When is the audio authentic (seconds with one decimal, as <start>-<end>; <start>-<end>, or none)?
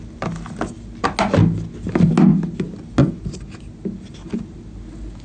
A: 0.0-5.2